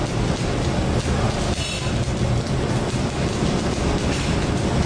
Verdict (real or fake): real